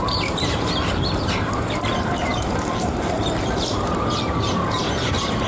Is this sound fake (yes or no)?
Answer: yes